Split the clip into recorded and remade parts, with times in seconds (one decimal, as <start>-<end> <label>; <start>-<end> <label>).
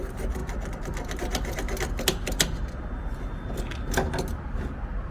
0.0-5.1 recorded